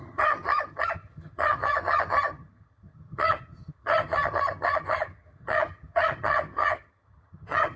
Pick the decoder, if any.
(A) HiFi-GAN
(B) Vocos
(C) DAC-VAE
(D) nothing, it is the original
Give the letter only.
A